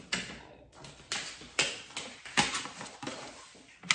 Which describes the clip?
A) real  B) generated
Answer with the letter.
A